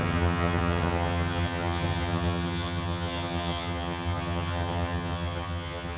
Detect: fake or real fake